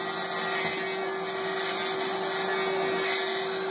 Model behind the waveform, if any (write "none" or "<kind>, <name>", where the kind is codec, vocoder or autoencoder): none